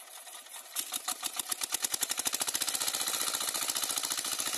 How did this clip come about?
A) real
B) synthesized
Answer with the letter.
A